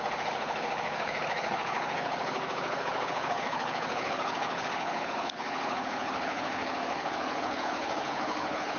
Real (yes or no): no